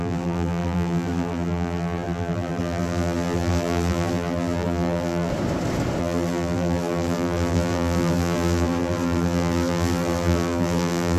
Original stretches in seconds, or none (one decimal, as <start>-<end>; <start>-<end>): 5.3-6.0